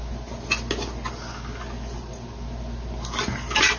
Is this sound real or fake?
real